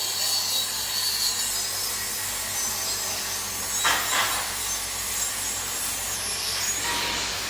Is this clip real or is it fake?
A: real